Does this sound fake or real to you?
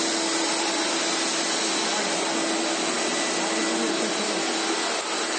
real